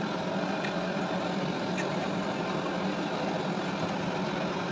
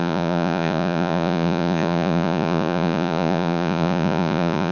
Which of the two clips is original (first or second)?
first